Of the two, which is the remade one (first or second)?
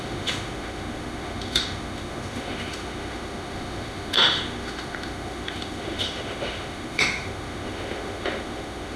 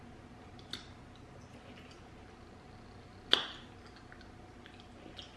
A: first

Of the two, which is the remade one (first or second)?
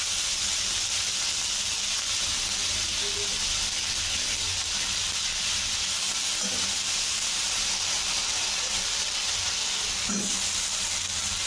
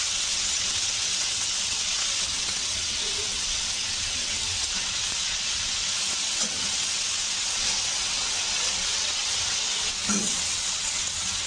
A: second